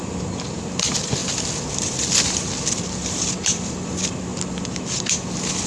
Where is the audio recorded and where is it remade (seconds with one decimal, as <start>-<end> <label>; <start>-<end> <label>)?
0.0-5.7 recorded